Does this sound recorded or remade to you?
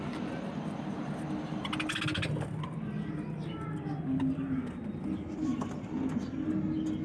recorded